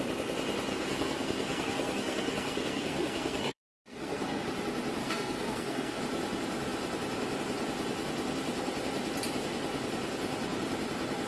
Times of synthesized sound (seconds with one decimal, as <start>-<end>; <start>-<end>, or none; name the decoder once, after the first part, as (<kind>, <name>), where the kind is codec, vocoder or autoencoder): 0.7-4.4 (codec, SNAC); 5.0-6.0